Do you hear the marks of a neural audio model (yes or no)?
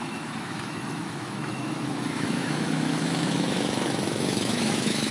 yes